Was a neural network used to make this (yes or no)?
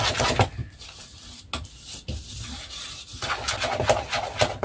no